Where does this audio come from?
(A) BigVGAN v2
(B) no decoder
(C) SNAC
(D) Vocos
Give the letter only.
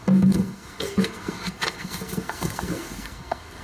C